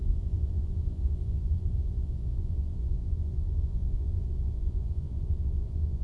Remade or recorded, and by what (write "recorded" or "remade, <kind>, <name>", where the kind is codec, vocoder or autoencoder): remade, vocoder, Vocos